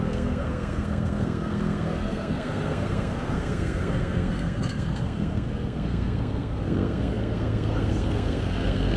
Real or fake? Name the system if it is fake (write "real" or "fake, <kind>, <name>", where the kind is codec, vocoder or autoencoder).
fake, codec, SNAC